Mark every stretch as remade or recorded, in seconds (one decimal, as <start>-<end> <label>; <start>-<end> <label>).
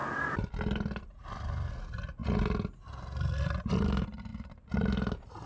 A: 0.0-5.5 recorded